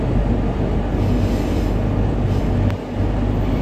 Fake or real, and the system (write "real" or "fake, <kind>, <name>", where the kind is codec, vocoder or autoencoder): real